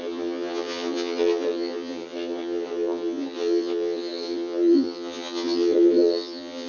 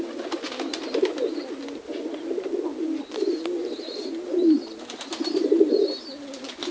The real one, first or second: second